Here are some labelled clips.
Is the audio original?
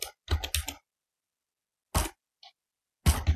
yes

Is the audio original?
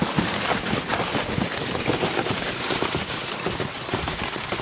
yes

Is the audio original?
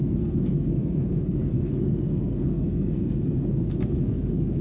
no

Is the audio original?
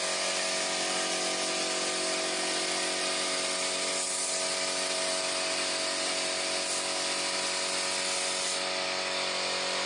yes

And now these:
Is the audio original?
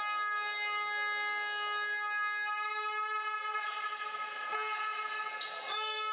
yes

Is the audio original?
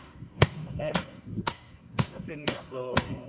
no